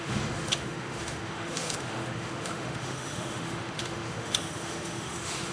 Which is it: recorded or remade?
remade